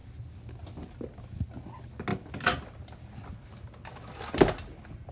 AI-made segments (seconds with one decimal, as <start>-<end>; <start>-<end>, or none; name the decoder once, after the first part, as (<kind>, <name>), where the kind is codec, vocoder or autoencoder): none